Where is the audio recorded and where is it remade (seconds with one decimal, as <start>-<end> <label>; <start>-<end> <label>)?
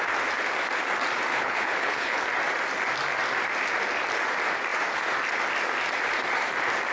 0.0-1.3 recorded; 1.3-2.2 remade; 2.2-6.9 recorded